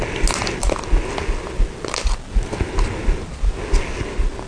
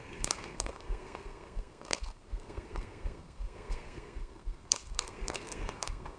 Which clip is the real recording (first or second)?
first